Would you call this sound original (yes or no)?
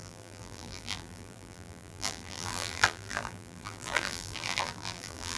no